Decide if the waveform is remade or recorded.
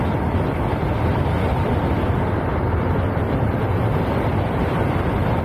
recorded